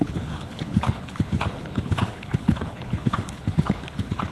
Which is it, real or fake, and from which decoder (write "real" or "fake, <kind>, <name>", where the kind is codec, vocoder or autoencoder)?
fake, codec, HILCodec